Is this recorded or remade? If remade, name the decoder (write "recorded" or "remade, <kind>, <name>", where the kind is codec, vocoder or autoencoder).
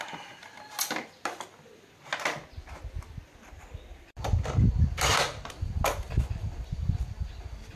recorded